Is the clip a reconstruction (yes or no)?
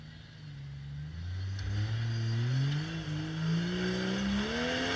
no